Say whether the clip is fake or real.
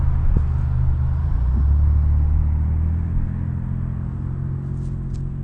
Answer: real